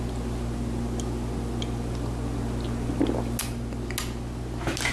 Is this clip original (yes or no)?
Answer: yes